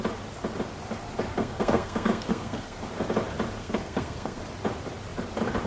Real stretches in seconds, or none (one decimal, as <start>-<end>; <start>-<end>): 0.0-1.3; 2.8-3.6; 4.4-5.7

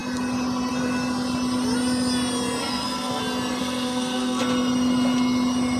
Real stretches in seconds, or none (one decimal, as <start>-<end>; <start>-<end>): 0.0-2.6; 3.2-3.6; 4.4-5.8

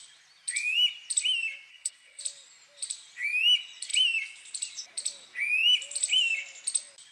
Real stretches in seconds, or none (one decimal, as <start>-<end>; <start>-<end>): 0.0-1.7; 2.2-7.1

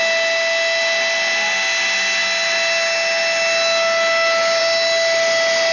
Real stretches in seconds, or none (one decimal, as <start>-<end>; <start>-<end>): 0.0-5.7

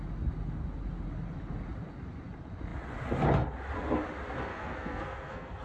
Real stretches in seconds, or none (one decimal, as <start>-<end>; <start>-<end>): 0.0-4.5

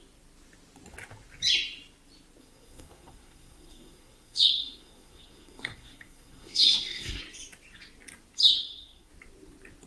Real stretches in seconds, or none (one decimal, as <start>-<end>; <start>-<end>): 0.0-2.4; 7.2-8.6; 9.1-9.9

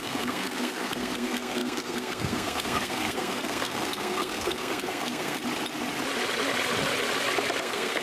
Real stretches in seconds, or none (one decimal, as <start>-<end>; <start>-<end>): 5.4-7.6

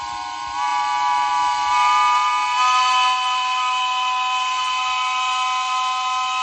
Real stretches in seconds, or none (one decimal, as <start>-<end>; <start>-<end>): 0.0-6.4